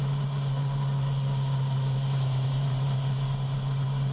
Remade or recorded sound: recorded